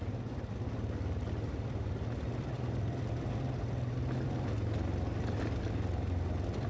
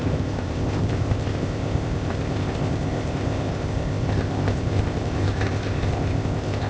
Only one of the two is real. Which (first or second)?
first